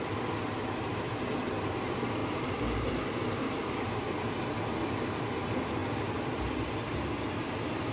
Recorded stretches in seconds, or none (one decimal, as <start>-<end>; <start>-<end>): 0.0-2.2; 5.3-5.8; 7.3-7.9